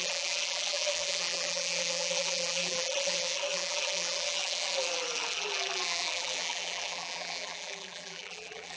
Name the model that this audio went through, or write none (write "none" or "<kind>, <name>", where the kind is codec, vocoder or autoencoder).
vocoder, BigVGAN v2